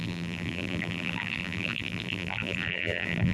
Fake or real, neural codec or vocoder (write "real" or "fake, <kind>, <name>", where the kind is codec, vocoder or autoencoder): fake, vocoder, BigVGAN v2